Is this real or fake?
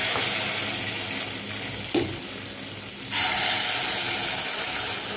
real